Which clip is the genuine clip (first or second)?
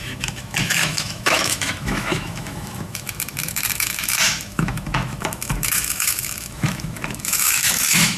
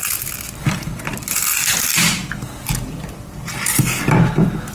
second